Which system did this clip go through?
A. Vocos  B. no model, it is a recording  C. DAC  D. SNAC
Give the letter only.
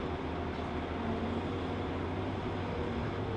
B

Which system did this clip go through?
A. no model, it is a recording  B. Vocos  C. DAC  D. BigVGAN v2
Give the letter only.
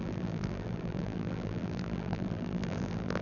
D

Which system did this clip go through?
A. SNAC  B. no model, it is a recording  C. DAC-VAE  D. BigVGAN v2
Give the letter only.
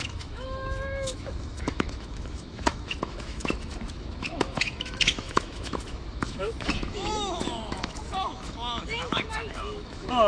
C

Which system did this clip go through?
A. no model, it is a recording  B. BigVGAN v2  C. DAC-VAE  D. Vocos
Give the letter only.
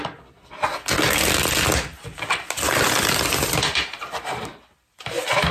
A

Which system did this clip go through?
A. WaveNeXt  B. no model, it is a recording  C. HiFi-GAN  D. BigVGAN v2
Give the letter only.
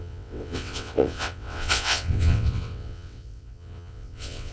A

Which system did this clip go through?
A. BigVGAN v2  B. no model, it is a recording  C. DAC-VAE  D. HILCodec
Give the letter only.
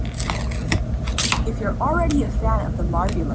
B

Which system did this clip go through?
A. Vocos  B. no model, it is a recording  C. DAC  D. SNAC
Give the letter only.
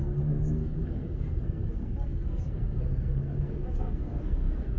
D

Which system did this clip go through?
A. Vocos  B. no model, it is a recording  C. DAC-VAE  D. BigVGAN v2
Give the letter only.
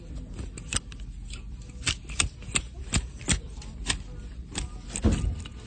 B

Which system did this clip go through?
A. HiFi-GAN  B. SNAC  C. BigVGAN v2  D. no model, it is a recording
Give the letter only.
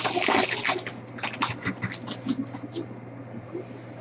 D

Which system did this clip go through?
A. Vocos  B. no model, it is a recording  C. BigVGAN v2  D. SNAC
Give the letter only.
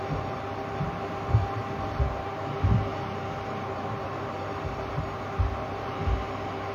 C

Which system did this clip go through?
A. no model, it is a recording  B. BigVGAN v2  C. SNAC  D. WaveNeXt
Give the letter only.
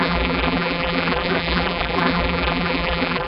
B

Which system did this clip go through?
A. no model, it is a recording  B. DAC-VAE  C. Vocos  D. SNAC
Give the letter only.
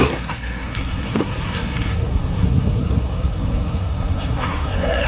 D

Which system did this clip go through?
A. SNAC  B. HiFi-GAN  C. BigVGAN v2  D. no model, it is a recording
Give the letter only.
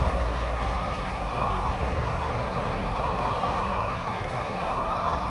A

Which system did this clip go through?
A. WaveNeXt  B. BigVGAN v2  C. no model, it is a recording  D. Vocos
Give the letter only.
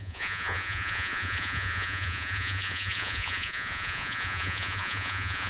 D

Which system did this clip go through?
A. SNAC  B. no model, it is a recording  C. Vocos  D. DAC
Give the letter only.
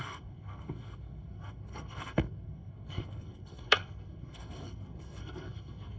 A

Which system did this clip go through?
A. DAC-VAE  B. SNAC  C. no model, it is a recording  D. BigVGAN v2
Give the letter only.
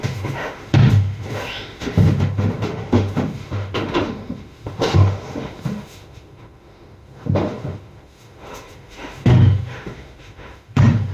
A